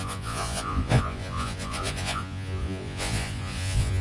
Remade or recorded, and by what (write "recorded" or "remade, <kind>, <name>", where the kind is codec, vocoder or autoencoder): remade, vocoder, Vocos